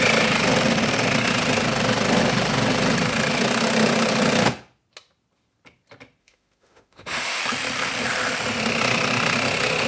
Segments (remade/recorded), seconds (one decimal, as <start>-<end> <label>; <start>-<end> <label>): 0.0-6.2 recorded; 6.2-7.4 remade; 7.4-9.9 recorded